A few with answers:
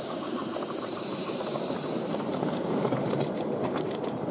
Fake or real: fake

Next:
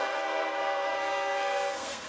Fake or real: fake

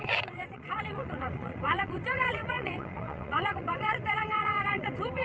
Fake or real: fake